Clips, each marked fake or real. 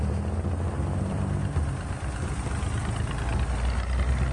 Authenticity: real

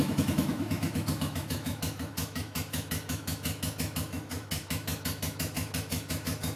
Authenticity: fake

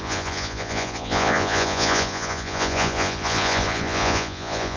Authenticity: fake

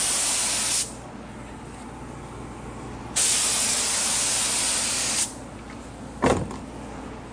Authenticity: real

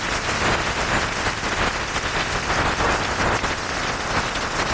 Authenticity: real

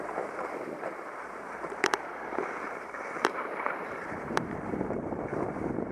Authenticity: fake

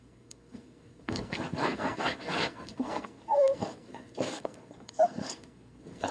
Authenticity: fake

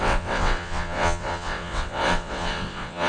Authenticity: fake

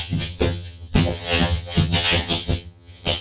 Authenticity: fake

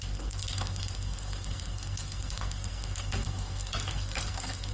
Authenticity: fake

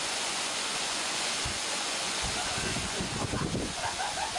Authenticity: fake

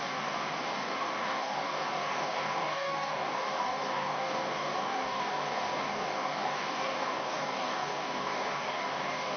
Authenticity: fake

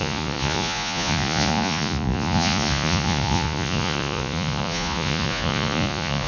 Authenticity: fake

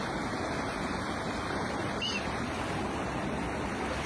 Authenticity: real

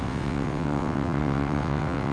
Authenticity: fake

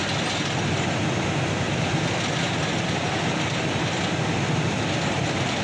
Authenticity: real